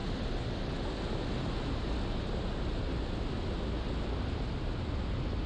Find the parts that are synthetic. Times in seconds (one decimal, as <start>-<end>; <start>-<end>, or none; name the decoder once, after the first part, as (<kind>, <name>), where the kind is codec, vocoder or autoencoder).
none